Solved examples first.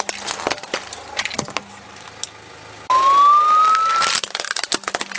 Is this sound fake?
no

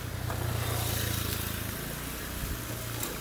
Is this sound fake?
no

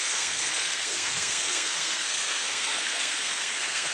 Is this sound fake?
yes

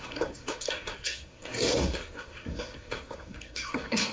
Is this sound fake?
yes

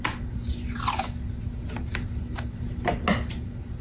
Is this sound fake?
no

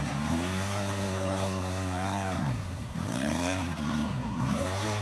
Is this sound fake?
yes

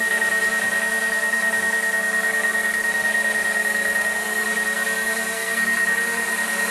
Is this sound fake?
yes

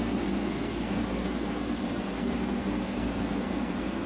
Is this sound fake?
yes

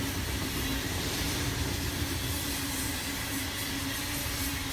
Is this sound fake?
no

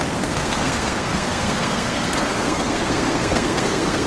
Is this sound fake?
yes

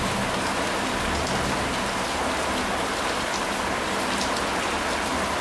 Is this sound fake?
no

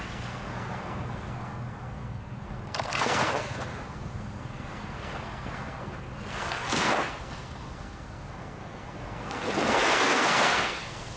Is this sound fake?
yes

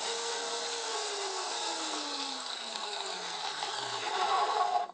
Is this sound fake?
yes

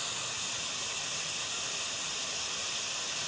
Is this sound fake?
no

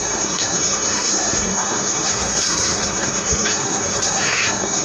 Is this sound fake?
yes